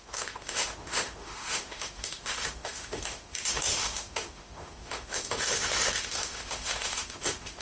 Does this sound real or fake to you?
fake